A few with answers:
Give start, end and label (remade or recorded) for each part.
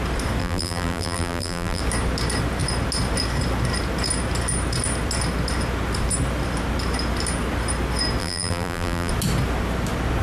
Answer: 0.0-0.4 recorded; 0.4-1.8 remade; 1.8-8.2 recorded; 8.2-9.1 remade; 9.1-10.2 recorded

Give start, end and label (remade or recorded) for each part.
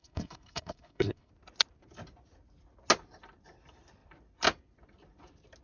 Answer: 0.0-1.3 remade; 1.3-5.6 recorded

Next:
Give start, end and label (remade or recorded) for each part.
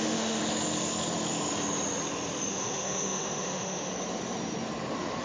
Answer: 0.0-0.4 remade; 0.4-2.5 recorded; 2.5-3.9 remade; 3.9-5.2 recorded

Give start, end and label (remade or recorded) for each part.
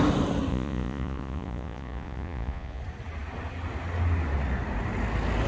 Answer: 0.0-0.5 recorded; 0.5-2.8 remade; 2.8-5.5 recorded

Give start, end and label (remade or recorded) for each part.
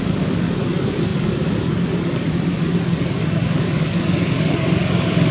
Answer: 0.0-5.3 remade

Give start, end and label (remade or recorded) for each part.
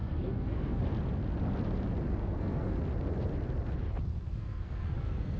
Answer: 0.0-0.8 remade; 0.8-2.2 recorded; 2.2-2.7 remade; 2.7-4.1 recorded; 4.1-5.4 remade